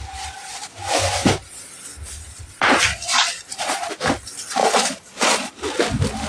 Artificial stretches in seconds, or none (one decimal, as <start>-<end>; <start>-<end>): 2.9-3.9; 4.6-5.5